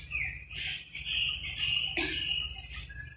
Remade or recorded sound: recorded